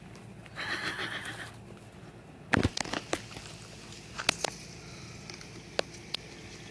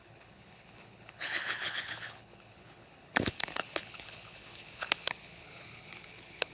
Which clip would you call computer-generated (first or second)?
second